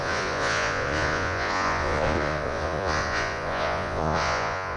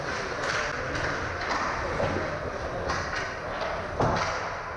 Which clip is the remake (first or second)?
first